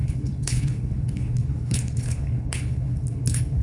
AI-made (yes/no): yes